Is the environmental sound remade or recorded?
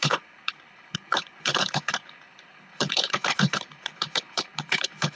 remade